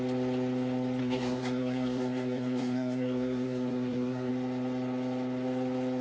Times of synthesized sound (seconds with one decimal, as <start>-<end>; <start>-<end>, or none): 1.0-4.3